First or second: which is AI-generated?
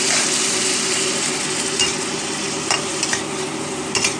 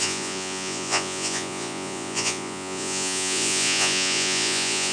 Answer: second